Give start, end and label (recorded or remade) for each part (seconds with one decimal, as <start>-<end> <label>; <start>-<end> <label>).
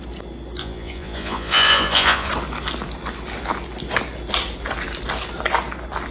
0.0-0.6 recorded; 0.6-2.3 remade; 2.3-6.1 recorded